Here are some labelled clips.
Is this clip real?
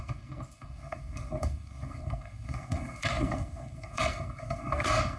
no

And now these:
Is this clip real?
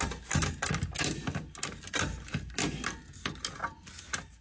yes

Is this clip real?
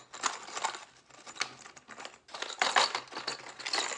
yes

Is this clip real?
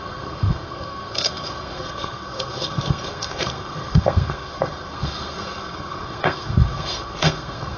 no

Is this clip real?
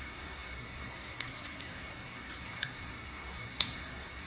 no